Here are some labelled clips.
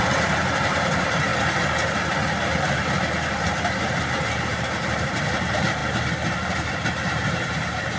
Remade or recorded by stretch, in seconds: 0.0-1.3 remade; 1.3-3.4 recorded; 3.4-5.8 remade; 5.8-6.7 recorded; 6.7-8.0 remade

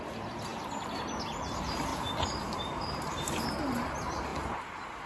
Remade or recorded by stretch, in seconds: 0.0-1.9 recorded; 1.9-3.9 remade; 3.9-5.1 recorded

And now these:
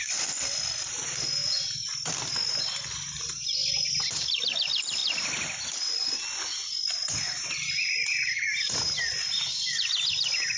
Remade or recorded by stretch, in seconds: 0.0-10.6 recorded